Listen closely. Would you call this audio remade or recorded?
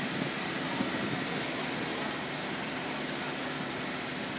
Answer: recorded